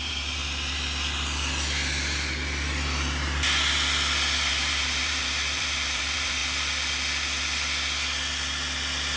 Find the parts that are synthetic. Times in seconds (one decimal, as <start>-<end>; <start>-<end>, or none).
0.0-0.4; 4.5-6.4